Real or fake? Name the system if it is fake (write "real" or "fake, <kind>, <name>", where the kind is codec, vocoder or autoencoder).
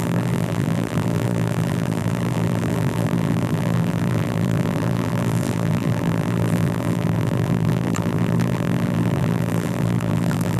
fake, vocoder, BigVGAN v2